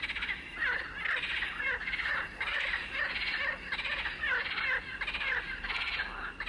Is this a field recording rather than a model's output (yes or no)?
yes